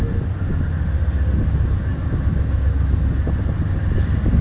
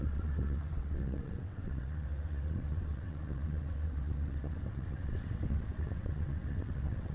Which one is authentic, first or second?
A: first